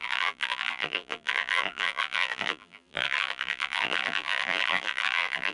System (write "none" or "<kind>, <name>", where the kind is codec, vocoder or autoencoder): vocoder, BigVGAN v2